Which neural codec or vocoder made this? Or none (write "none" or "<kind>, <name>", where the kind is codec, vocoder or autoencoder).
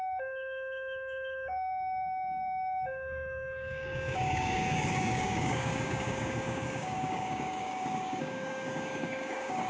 codec, DAC